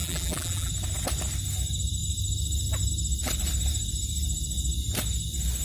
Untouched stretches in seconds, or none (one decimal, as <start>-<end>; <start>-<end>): 0.7-5.6